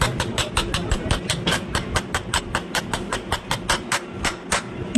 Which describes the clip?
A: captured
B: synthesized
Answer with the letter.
A